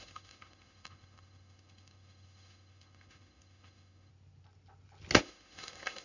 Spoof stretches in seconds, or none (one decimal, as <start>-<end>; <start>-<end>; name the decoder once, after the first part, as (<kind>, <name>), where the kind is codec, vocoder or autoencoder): 0.0-4.1 (autoencoder, DAC-VAE); 5.2-6.0

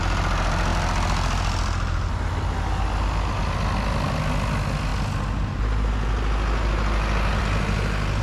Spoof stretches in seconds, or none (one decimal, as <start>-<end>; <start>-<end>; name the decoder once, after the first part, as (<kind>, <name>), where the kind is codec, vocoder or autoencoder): none

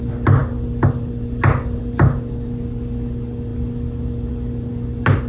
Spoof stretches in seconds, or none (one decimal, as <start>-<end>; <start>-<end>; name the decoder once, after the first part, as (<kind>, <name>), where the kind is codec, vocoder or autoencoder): none

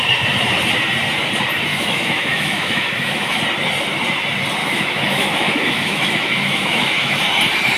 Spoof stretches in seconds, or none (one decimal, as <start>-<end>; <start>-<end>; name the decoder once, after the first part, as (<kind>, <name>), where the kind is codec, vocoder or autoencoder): 1.7-3.4 (autoencoder, DAC-VAE); 4.6-7.2